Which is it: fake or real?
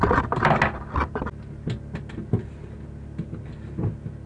real